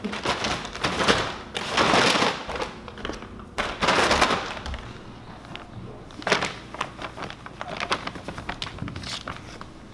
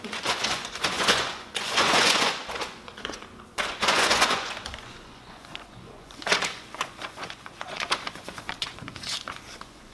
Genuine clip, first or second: first